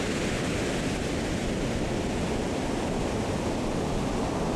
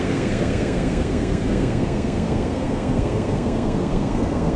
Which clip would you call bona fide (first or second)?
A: first